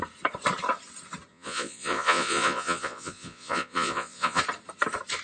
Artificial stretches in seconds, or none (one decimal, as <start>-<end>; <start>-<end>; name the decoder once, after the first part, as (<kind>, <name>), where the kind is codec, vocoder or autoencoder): 1.3-4.4 (vocoder, Vocos)